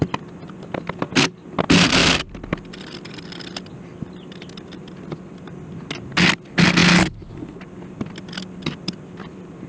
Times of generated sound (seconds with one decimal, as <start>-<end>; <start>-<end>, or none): none